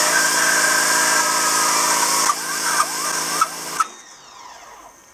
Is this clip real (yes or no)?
yes